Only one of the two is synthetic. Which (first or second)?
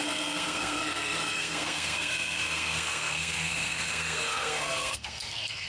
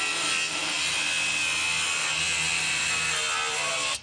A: first